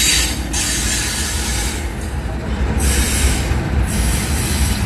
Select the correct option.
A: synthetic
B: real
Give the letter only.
B